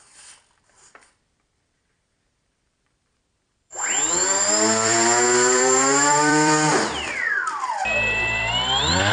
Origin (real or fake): fake